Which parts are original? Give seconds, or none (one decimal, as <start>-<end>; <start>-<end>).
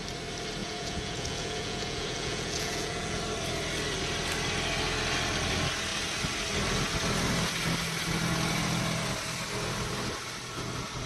0.0-0.6; 3.2-11.1